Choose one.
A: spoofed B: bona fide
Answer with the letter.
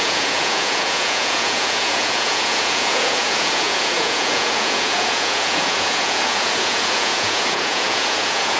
A